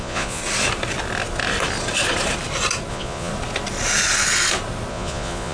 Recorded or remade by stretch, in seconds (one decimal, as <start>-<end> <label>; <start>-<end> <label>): 0.0-0.4 remade; 0.4-2.9 recorded; 2.9-3.3 remade; 3.3-4.9 recorded; 4.9-5.5 remade

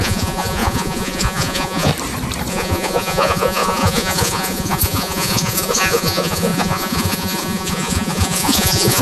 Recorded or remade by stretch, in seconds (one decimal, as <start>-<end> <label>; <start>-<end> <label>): 0.0-1.9 remade; 1.9-2.5 recorded; 2.5-9.0 remade